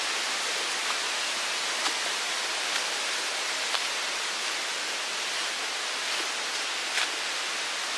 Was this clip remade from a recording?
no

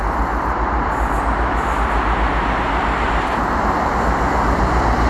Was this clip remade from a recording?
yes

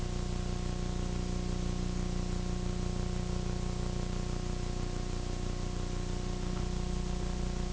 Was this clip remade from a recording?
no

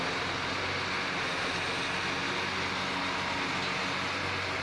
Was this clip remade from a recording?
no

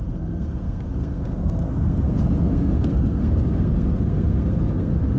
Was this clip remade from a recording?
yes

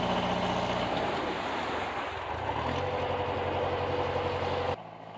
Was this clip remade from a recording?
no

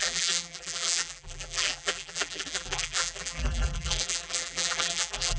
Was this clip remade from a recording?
yes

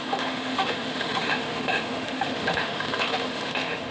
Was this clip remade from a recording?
yes